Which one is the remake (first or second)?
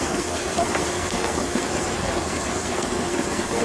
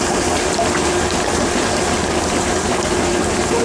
first